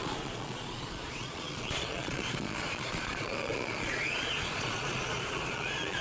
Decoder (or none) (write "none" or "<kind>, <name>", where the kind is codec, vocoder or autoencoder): vocoder, Vocos